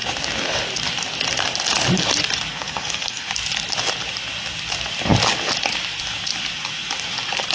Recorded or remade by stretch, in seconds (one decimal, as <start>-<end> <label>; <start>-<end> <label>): 0.0-2.5 recorded; 2.5-3.3 remade; 3.3-7.5 recorded